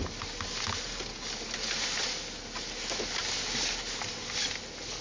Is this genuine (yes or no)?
yes